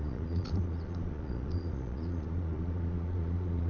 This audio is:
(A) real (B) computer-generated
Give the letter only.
B